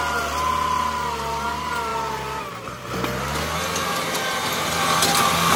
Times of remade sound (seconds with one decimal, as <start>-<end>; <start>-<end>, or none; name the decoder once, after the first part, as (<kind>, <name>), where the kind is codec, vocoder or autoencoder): none